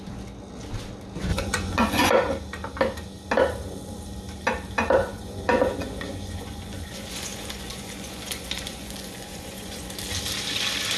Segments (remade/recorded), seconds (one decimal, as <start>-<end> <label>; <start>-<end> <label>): 0.0-1.3 recorded; 1.3-2.1 remade; 2.1-5.0 recorded; 5.0-9.9 remade; 9.9-11.0 recorded

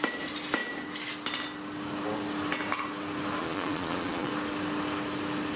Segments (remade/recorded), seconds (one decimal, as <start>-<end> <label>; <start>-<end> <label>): 0.0-3.4 recorded; 3.4-4.3 remade; 4.3-5.6 recorded

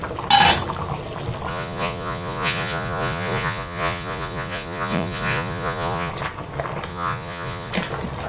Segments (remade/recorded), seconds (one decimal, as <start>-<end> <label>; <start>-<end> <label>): 0.0-1.5 recorded; 1.5-6.1 remade; 6.1-6.9 recorded; 6.9-7.7 remade; 7.7-8.3 recorded

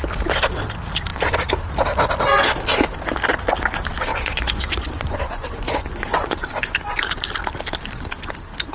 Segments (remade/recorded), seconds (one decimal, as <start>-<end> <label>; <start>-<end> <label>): 0.0-4.1 recorded; 4.1-7.1 remade; 7.1-8.7 recorded